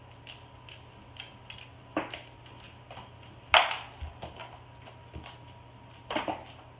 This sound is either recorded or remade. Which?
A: recorded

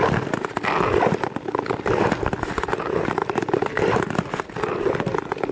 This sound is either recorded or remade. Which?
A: recorded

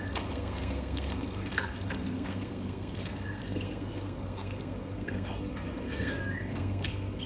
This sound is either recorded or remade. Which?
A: remade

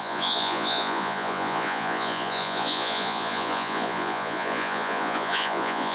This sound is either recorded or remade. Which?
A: remade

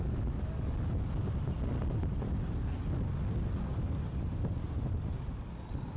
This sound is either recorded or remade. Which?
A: recorded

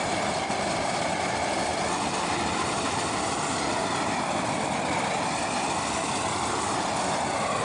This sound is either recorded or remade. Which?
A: recorded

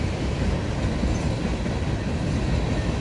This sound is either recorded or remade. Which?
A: recorded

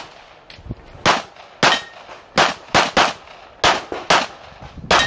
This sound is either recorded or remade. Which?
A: recorded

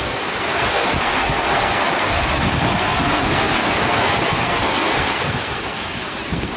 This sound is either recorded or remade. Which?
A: remade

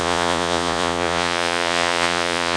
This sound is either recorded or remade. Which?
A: remade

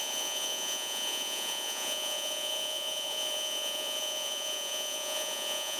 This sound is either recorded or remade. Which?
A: remade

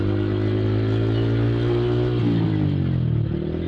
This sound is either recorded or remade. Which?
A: recorded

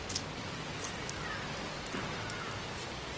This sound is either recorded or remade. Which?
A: recorded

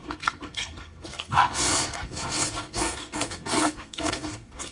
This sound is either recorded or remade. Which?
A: remade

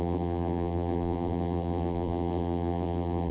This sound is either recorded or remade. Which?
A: remade